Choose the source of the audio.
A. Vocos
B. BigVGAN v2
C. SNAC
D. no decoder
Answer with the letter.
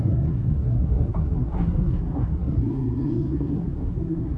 C